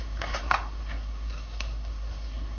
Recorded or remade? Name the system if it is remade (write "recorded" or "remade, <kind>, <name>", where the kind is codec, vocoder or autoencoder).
remade, codec, SNAC